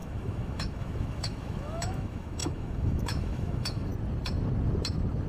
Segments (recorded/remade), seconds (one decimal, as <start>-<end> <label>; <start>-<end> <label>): 0.0-3.9 remade; 3.9-5.3 recorded